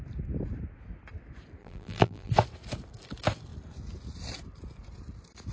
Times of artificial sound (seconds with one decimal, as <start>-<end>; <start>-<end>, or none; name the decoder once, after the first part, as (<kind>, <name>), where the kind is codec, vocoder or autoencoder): 1.6-2.3 (vocoder, BigVGAN v2)